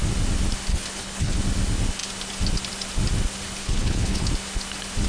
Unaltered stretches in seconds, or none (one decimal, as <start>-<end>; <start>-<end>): 0.0-0.7; 1.4-3.6; 4.3-5.1

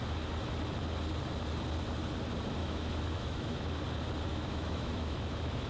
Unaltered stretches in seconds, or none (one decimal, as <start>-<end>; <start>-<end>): 0.0-2.6; 3.8-4.3

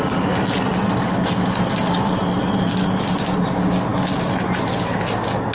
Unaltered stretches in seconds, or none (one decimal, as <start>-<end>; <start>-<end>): 0.0-5.5

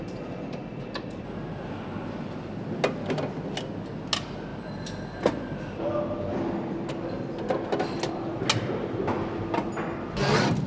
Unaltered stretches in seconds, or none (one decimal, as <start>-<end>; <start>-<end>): 0.0-10.7

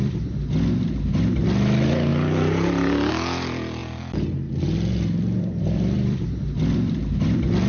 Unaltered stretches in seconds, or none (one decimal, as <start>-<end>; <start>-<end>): 2.1-3.1; 3.8-5.4